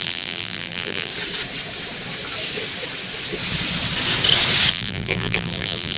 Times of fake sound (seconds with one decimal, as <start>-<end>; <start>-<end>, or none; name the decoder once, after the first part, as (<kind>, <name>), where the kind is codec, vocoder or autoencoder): 0.0-1.1 (vocoder, BigVGAN v2); 4.7-6.0